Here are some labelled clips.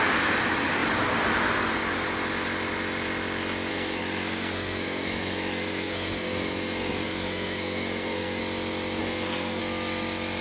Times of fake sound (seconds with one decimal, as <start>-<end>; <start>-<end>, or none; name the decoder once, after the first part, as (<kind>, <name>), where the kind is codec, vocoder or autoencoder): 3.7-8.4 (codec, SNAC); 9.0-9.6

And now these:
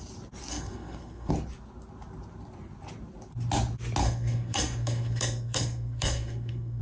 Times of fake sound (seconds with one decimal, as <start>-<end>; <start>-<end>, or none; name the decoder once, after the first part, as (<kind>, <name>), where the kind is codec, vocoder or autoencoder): 0.5-1.3 (codec, SNAC); 4.0-6.8

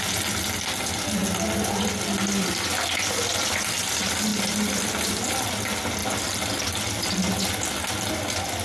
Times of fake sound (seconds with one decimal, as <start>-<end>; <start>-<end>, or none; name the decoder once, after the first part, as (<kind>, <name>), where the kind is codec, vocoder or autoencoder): 6.0-7.1 (vocoder, BigVGAN v2)

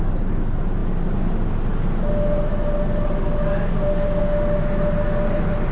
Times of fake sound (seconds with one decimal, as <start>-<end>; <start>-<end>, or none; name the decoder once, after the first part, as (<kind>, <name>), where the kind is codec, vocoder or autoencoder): none